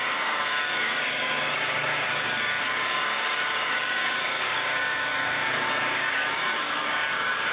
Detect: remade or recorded remade